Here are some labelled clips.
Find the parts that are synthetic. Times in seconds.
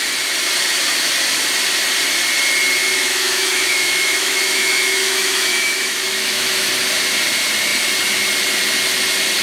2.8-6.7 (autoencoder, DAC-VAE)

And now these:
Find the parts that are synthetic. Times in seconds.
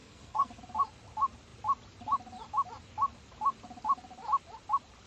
0.0-0.6 (codec, SNAC)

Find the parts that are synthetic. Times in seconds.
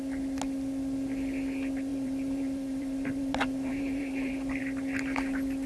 1.9-4.6 (vocoder, BigVGAN v2)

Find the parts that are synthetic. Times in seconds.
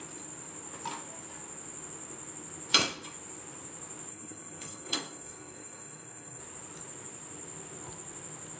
4.1-6.4 (codec, SNAC)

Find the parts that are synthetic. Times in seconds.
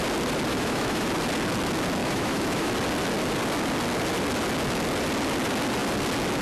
0.5-1.1 (autoencoder, DAC-VAE); 2.0-2.7